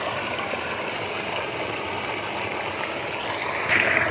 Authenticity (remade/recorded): recorded